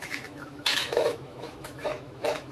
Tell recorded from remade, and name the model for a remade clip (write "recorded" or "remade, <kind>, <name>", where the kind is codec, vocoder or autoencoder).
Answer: remade, autoencoder, DAC-VAE